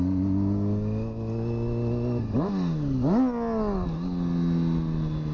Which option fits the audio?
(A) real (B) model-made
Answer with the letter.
A